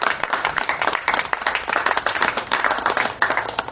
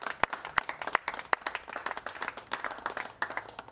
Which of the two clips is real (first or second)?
second